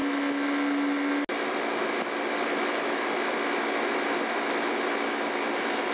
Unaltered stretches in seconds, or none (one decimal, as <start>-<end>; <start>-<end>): 0.0-5.9